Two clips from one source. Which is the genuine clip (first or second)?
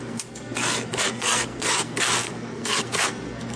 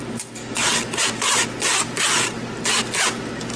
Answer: second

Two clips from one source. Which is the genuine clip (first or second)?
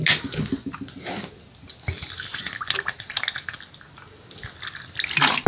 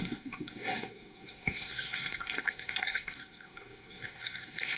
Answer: first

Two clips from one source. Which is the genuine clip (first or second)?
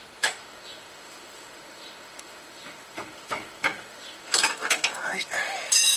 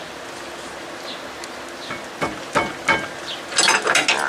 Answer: second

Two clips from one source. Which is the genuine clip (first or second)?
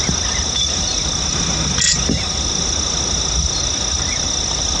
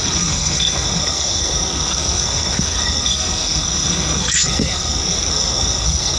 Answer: first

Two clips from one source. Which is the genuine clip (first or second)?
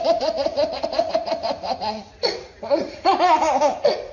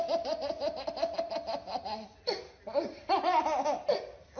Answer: second